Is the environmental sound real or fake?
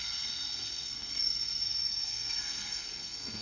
fake